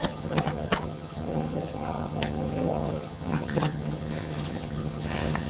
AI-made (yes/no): yes